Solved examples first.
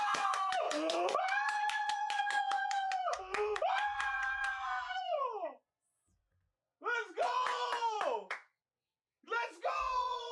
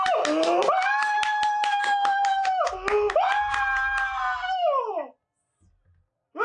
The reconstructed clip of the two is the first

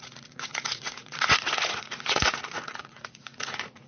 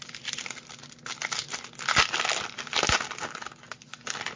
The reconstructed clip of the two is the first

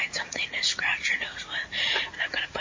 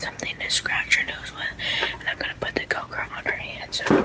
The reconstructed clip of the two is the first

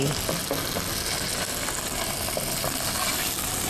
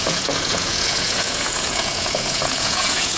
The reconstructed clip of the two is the second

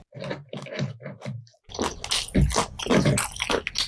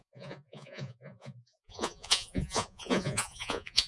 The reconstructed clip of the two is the second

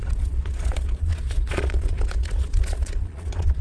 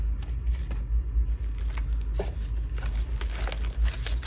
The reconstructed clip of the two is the first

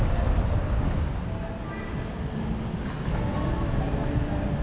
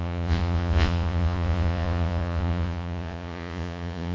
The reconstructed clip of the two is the second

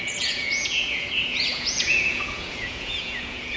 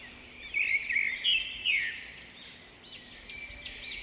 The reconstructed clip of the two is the first